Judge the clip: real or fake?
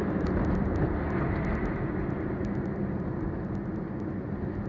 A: real